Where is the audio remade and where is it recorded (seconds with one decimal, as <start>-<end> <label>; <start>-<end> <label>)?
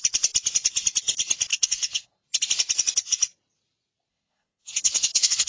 0.0-1.5 recorded; 1.5-2.1 remade; 2.1-4.1 recorded; 4.1-5.5 remade